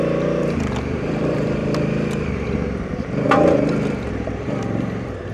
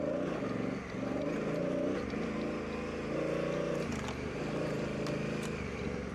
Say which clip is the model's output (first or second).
first